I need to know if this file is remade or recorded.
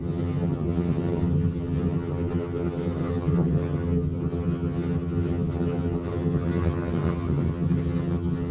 remade